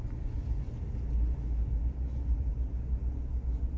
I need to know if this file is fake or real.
real